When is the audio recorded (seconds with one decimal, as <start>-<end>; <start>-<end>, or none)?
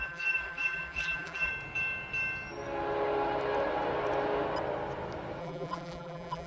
1.5-5.4